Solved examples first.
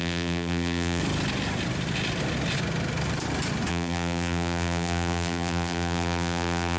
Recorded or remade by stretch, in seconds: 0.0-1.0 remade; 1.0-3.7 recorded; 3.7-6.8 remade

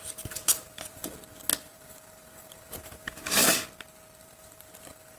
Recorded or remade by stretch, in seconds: 0.0-1.0 remade; 1.0-1.6 recorded; 1.6-3.4 remade; 3.4-4.2 recorded; 4.2-5.2 remade

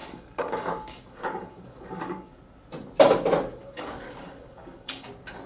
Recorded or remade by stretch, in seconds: 0.0-2.4 remade; 2.4-3.5 recorded; 3.5-5.1 remade; 5.1-5.5 recorded

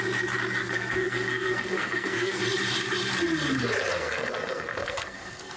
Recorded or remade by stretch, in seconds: 0.0-0.6 recorded; 0.6-2.4 remade; 2.4-3.9 recorded; 3.9-5.6 remade

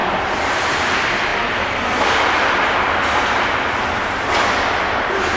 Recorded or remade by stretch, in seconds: 0.0-0.8 remade; 0.8-5.4 recorded

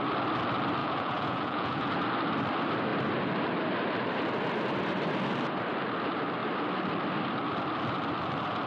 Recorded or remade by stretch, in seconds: 0.0-0.8 recorded; 0.8-1.9 remade; 1.9-8.7 recorded

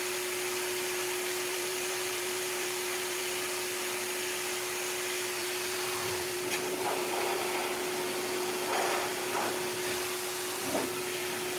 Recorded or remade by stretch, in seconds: 0.0-1.5 recorded; 1.5-3.2 remade; 3.2-5.4 recorded; 5.4-7.6 remade; 7.6-11.6 recorded

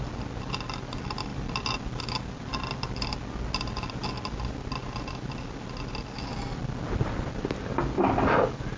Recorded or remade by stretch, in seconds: 0.0-8.8 recorded